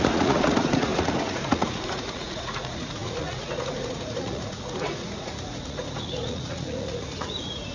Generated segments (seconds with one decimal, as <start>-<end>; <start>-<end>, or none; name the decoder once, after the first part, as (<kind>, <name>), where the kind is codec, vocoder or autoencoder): 0.0-7.7 (vocoder, Vocos)